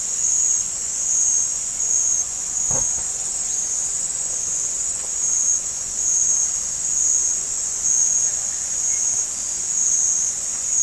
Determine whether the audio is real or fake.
fake